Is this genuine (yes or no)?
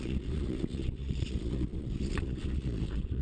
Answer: no